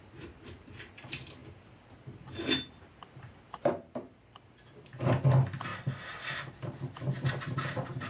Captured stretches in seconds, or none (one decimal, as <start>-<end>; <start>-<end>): 0.0-8.1